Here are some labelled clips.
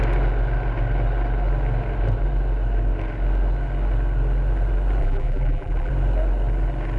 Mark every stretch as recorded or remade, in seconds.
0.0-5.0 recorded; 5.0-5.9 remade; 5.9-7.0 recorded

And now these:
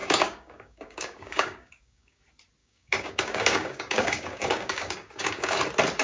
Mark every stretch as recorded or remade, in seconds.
0.0-2.2 remade; 2.2-2.6 recorded; 2.6-5.6 remade; 5.6-6.0 recorded